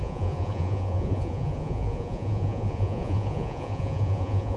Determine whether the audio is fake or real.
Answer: fake